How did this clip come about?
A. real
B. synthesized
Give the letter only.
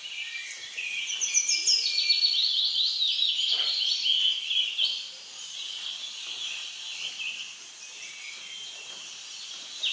A